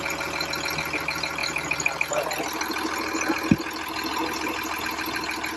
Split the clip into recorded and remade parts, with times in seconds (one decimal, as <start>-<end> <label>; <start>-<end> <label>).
0.0-5.6 recorded